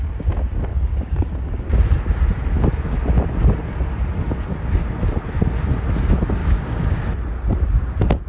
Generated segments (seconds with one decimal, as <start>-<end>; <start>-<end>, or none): 0.7-1.6; 6.4-7.0